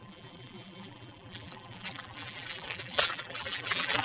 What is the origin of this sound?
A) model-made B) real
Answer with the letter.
A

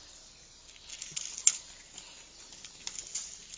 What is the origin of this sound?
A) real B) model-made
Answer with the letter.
A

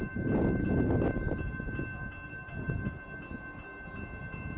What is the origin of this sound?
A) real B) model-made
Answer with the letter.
A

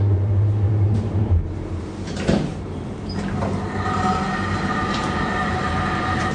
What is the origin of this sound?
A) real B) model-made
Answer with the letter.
B